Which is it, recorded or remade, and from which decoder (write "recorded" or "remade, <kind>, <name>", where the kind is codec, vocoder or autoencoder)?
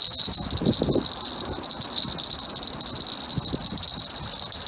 recorded